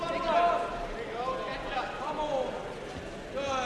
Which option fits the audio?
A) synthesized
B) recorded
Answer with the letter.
B